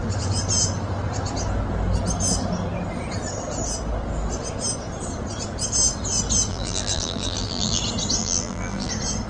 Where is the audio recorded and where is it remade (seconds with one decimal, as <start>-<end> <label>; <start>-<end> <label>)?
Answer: 0.0-6.5 recorded; 6.5-7.8 remade; 7.8-8.2 recorded; 8.2-8.9 remade; 8.9-9.3 recorded